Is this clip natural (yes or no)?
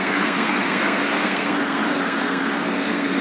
no